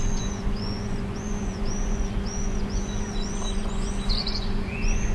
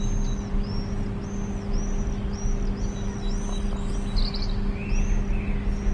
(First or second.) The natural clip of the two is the second